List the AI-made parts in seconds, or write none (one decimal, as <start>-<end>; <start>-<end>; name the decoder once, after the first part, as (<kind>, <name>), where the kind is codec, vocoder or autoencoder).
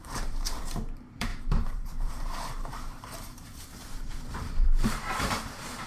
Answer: 0.0-5.9 (vocoder, BigVGAN v2)